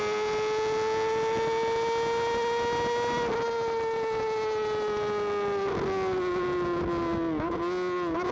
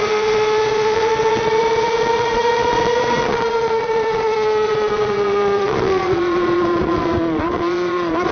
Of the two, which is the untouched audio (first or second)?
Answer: first